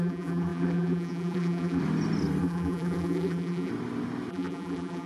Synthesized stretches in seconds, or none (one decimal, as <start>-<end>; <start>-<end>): 0.0-1.8; 2.4-3.7; 4.3-5.1